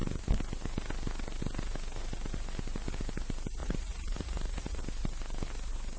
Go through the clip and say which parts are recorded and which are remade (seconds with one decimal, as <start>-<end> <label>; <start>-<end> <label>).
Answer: 0.0-3.6 recorded; 3.6-4.8 remade; 4.8-6.0 recorded